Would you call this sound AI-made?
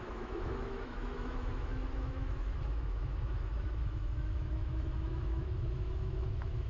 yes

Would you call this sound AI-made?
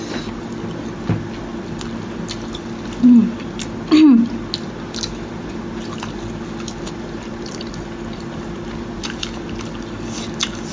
no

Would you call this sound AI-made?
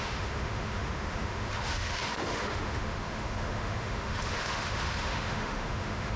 yes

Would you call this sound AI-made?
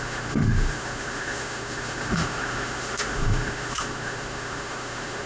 yes